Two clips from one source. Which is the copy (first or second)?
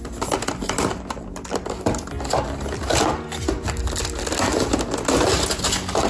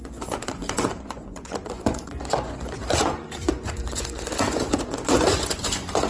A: second